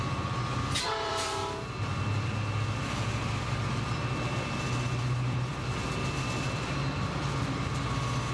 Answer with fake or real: fake